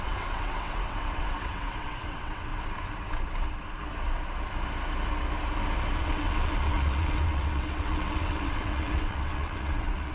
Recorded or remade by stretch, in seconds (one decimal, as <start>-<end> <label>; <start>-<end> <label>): 0.0-2.5 remade; 2.5-6.0 recorded; 6.0-10.1 remade